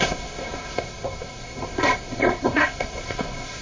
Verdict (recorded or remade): remade